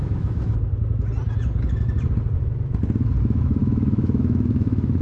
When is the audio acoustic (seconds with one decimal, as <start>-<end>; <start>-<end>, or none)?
0.7-3.2